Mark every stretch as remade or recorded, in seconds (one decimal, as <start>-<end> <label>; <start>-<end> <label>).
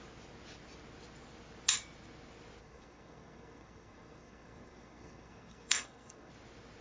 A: 0.0-2.6 recorded; 2.6-6.3 remade; 6.3-6.8 recorded